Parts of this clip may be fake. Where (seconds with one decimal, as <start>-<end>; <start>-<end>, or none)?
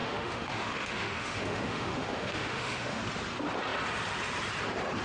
0.0-3.0